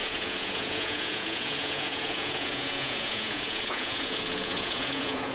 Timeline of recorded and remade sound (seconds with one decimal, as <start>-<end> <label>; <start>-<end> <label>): 0.0-5.3 remade